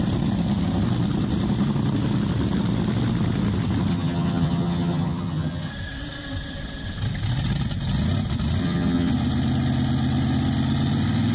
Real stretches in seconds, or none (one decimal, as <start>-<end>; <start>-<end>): 0.0-3.9; 5.7-8.6; 9.1-11.3